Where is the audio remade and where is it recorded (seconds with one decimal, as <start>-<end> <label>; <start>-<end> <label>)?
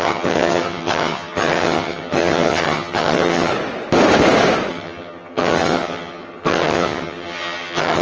0.0-3.5 remade; 3.5-4.7 recorded; 4.7-8.0 remade